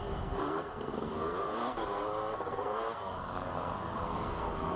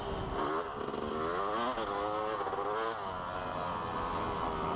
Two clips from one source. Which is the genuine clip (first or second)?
second